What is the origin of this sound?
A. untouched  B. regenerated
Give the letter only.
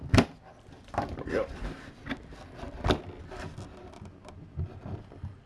A